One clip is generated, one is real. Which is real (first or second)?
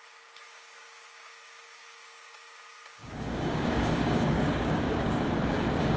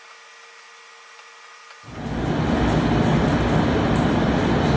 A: second